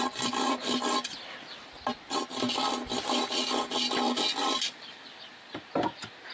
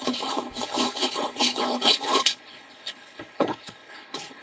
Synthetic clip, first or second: second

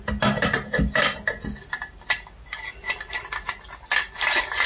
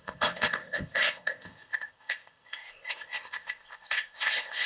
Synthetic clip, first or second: second